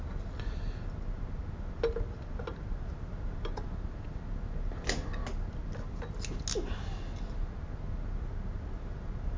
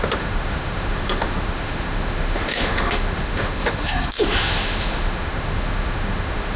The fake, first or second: second